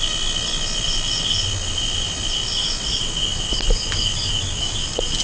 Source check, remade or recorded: recorded